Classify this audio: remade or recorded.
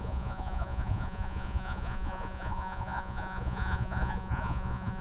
remade